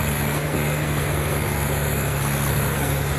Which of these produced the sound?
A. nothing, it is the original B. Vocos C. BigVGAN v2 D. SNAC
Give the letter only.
D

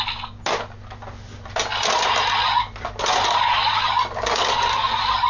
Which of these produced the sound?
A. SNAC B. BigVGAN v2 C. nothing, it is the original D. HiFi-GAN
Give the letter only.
C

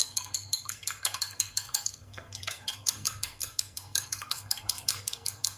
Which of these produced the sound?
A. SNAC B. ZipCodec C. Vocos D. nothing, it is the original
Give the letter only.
A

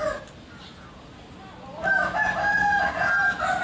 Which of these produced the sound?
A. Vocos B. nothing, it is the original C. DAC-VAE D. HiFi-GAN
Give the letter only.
B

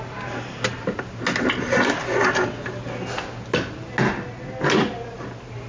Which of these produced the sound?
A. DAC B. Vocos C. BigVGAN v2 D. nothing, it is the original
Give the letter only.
D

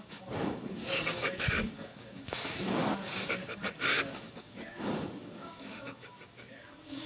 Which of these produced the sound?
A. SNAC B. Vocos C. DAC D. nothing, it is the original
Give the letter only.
C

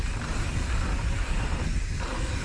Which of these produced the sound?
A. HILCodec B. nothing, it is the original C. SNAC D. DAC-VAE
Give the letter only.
B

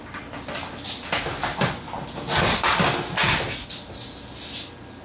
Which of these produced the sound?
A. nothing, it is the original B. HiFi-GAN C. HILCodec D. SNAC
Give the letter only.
A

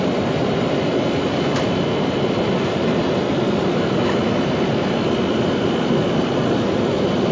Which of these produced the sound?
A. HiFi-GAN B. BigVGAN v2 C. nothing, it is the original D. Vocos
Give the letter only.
C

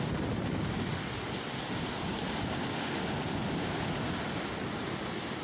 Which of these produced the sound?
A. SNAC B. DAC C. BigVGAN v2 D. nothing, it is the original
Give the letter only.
D